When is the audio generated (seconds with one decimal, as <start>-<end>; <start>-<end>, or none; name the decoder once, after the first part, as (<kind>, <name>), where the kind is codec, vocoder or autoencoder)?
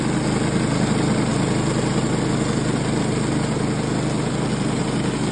none